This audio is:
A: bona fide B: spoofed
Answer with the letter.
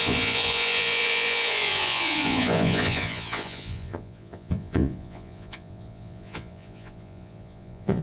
B